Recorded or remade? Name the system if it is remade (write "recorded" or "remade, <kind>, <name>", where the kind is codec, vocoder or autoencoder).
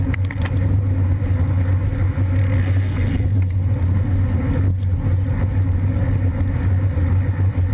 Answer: recorded